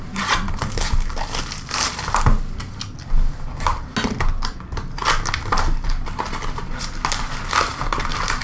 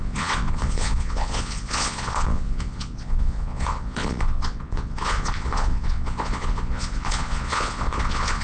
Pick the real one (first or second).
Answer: first